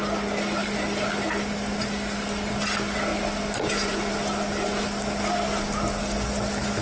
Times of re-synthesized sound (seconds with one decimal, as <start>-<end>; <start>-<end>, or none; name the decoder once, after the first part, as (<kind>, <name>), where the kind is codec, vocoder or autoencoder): none